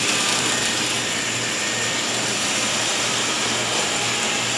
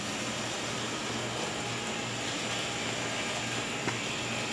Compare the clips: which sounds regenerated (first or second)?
first